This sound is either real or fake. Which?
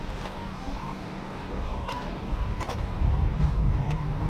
fake